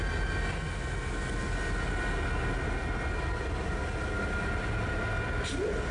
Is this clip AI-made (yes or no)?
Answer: no